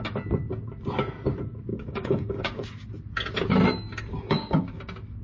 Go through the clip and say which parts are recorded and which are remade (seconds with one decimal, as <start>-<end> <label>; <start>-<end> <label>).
0.0-1.7 recorded; 1.7-2.9 remade; 2.9-4.1 recorded; 4.1-4.8 remade; 4.8-5.2 recorded